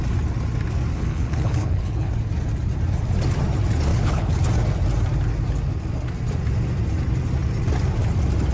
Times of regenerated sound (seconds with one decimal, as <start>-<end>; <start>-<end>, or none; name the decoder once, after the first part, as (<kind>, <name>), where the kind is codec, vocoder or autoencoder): 0.9-2.1 (codec, HILCodec); 3.9-4.4